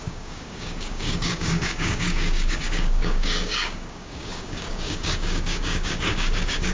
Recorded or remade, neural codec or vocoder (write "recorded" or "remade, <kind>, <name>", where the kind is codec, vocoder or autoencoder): remade, codec, DAC